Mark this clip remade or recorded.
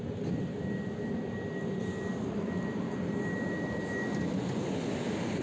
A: recorded